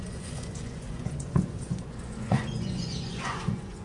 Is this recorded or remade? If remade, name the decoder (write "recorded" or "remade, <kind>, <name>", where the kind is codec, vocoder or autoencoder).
remade, vocoder, Vocos